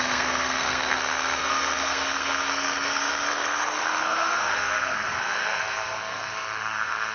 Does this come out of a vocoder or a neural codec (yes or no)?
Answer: yes